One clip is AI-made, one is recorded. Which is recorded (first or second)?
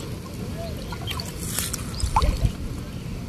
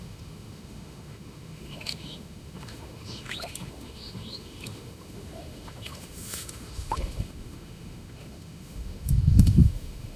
first